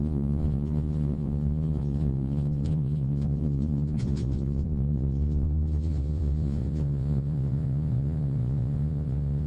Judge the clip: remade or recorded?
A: remade